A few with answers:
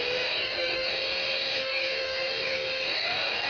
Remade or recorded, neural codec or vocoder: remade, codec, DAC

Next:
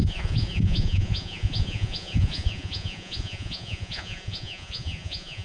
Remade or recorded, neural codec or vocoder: remade, vocoder, Vocos